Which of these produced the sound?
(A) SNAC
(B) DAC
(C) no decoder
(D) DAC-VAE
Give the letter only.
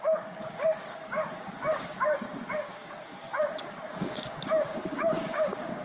B